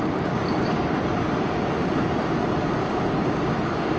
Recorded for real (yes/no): yes